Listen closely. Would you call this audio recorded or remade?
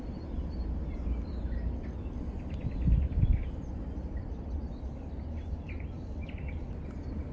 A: recorded